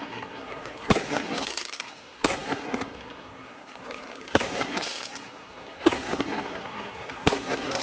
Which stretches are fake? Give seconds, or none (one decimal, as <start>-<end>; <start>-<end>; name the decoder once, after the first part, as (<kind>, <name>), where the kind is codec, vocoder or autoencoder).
0.0-7.8 (codec, SNAC)

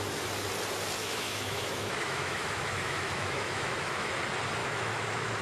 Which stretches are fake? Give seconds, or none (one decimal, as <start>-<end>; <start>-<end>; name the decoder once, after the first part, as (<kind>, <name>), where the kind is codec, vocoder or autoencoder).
1.0-4.1 (autoencoder, DAC-VAE); 4.6-5.4

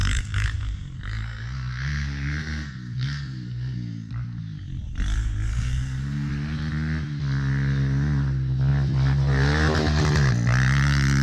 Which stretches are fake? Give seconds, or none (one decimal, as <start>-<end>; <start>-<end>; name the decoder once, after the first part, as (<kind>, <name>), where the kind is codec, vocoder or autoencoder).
0.0-4.1 (codec, SNAC); 5.5-6.3

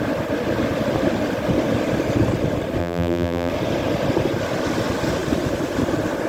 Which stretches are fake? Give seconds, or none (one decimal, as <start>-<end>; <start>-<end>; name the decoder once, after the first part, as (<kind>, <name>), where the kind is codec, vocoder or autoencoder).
2.8-3.5 (vocoder, BigVGAN v2)